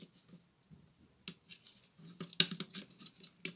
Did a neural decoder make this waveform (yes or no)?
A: no